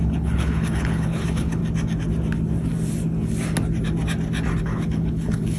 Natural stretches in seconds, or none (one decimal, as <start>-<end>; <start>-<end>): 1.6-4.6